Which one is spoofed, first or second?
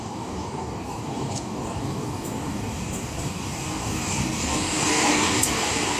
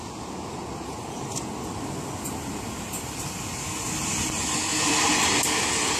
first